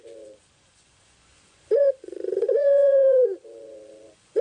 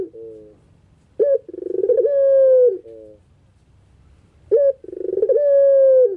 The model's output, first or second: first